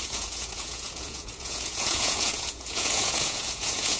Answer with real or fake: fake